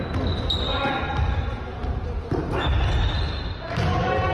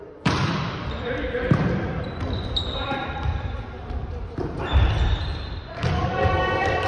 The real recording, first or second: first